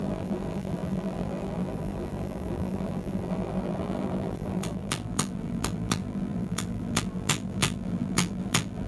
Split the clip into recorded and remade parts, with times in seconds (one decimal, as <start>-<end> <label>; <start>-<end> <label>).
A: 0.0-8.9 remade